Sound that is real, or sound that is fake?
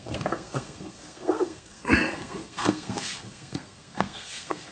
fake